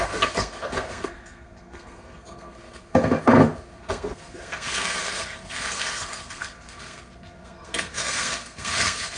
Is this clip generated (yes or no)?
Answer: yes